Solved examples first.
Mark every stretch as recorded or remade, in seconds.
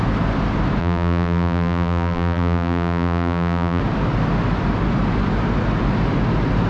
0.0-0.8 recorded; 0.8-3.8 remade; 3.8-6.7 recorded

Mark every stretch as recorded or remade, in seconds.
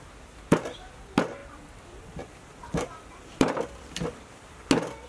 0.0-1.4 recorded; 1.4-4.5 remade; 4.5-5.1 recorded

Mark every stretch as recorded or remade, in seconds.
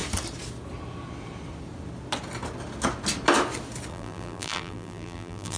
0.0-3.9 recorded; 3.9-5.6 remade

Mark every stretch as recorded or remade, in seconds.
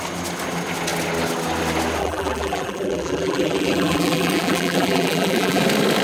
0.0-2.0 recorded; 2.0-5.6 remade; 5.6-6.0 recorded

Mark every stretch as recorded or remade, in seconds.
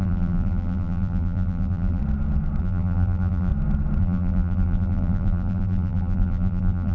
0.0-2.0 remade; 2.0-2.6 recorded; 2.6-3.5 remade; 3.5-4.0 recorded; 4.0-6.9 remade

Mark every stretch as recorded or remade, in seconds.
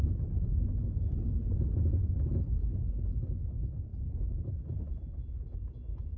0.0-3.9 recorded; 3.9-4.5 remade; 4.5-6.2 recorded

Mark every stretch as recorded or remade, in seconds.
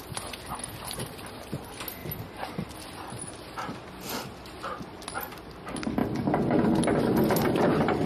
0.0-8.1 recorded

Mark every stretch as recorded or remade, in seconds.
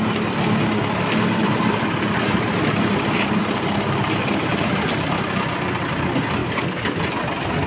0.0-1.4 recorded; 1.4-5.1 remade; 5.1-6.4 recorded; 6.4-7.1 remade; 7.1-7.7 recorded